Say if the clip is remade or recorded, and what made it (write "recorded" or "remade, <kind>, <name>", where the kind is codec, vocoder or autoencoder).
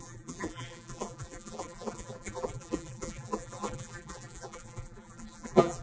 remade, vocoder, BigVGAN v2